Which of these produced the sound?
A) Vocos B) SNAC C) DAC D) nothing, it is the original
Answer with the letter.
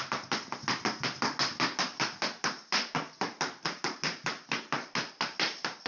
D